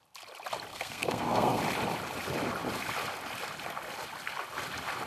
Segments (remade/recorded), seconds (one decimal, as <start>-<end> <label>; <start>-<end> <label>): 0.0-0.7 recorded; 0.7-1.6 remade; 1.6-5.1 recorded